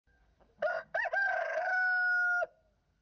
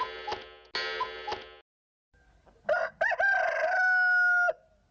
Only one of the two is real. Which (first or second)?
second